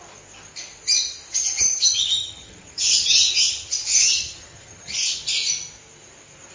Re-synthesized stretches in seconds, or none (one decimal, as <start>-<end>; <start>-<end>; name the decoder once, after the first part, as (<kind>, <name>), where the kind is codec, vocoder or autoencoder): 1.3-5.0 (vocoder, HiFi-GAN)